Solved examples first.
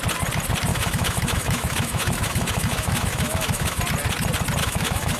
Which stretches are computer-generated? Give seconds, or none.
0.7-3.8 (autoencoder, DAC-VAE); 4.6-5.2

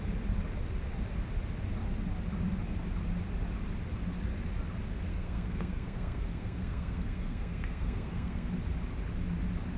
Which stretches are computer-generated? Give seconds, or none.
5.1-8.5 (codec, SNAC)

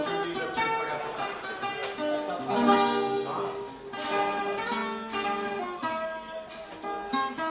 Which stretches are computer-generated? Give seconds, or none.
none

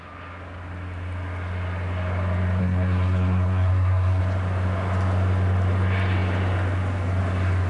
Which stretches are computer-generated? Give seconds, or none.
2.6-4.2 (codec, SNAC)